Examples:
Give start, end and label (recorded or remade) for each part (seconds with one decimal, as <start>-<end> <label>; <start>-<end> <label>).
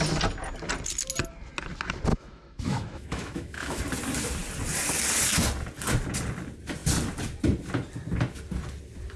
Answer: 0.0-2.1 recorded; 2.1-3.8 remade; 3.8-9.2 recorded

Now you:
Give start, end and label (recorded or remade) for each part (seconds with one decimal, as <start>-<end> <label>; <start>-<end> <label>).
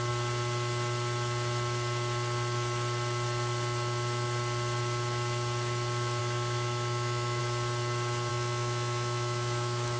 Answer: 0.0-6.2 recorded; 6.2-7.4 remade; 7.4-8.3 recorded; 8.3-10.0 remade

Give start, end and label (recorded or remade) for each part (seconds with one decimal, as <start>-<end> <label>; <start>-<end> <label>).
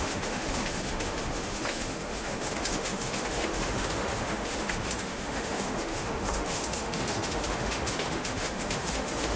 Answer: 0.0-9.4 remade